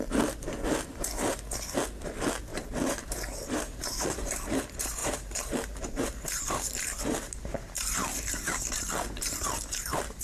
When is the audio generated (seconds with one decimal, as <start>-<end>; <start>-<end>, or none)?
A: 2.5-4.6; 5.0-10.2